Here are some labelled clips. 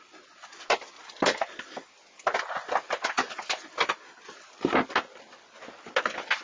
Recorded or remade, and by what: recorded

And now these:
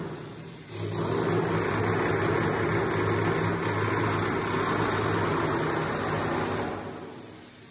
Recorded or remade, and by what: recorded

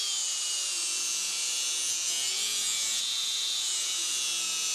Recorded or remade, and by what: remade, vocoder, Vocos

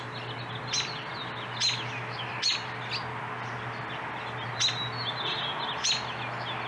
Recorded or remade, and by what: recorded